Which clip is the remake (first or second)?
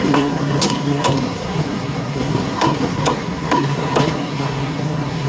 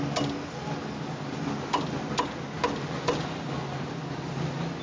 first